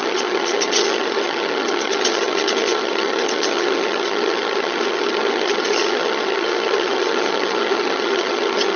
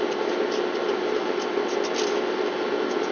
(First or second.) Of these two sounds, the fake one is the first